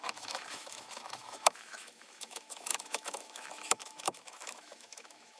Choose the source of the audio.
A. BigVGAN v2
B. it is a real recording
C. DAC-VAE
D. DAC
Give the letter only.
C